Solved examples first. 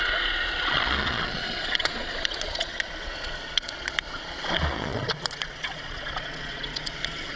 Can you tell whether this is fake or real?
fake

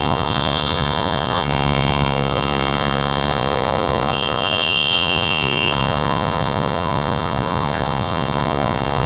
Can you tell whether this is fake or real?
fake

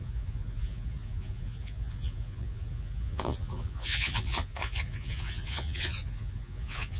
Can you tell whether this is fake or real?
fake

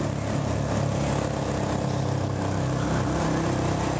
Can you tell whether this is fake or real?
real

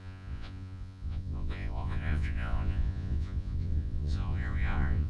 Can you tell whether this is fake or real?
fake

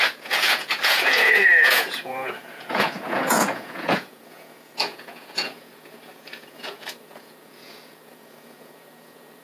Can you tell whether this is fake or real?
fake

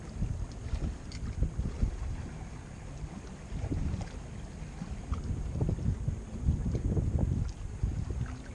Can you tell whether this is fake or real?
real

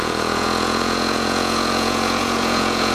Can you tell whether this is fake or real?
fake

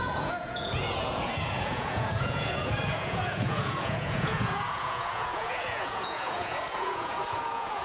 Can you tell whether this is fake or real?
fake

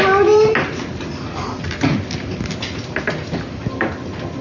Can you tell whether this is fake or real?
real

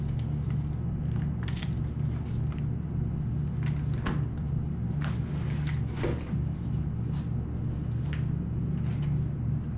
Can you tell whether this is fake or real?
real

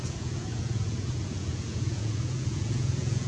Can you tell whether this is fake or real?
fake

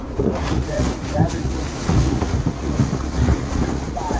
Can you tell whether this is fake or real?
fake